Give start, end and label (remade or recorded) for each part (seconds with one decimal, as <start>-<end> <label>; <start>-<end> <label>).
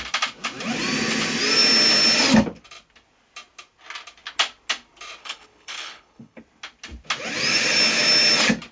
0.0-5.2 recorded; 5.2-6.4 remade; 6.4-8.7 recorded